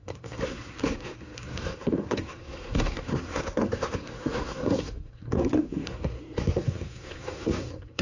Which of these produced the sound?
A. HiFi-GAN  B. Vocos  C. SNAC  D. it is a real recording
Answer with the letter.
C